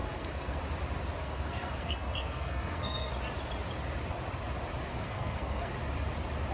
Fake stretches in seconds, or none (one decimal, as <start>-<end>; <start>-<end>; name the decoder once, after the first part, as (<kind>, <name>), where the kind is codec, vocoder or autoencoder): 0.0-0.6 (codec, SNAC); 1.2-3.1; 4.9-5.7